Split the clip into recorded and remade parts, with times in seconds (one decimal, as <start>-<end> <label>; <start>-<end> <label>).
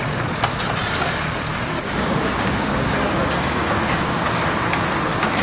0.0-1.5 recorded; 1.5-4.7 remade; 4.7-5.4 recorded